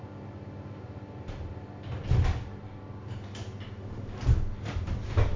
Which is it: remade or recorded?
recorded